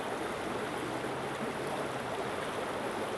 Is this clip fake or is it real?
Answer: real